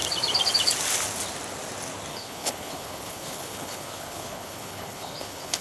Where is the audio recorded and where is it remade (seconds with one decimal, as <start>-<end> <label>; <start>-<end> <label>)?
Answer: 0.0-2.1 recorded; 2.1-5.6 remade